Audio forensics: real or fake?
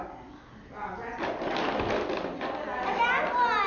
real